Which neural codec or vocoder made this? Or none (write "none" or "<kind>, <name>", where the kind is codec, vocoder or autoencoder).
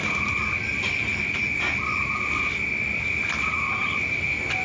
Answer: none